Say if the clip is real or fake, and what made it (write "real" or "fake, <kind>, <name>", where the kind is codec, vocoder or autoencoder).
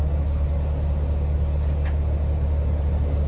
real